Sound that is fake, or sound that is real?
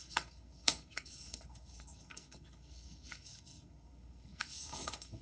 fake